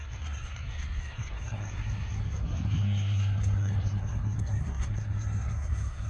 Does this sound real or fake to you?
fake